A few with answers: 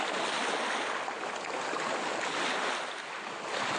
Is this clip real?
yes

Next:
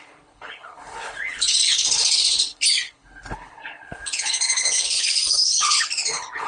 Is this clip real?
no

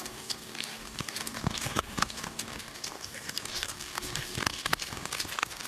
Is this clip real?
no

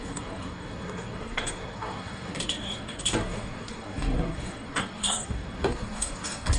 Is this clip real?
no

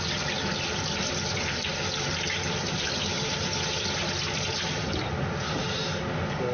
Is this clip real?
yes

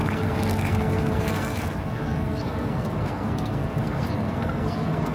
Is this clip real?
no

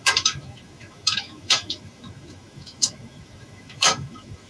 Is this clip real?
no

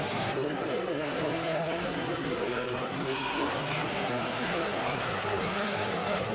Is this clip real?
no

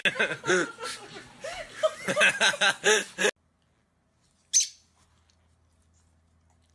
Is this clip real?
yes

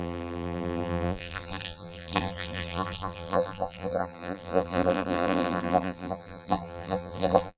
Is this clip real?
no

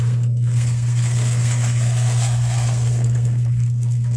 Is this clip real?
no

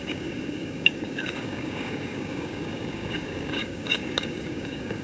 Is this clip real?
no